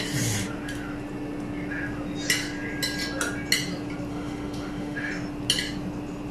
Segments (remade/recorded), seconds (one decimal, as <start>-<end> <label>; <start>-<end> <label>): 0.0-4.1 recorded; 4.1-5.1 remade; 5.1-6.3 recorded